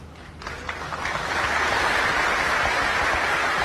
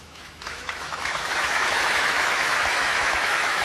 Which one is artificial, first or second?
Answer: second